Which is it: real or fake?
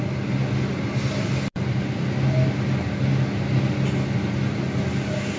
real